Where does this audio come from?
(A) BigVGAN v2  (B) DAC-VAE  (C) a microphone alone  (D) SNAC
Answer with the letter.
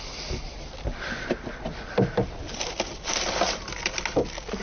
C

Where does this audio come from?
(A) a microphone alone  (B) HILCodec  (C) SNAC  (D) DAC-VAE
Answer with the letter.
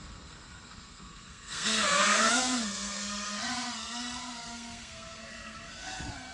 C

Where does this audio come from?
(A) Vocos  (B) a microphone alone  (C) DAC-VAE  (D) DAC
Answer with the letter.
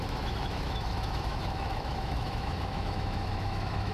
C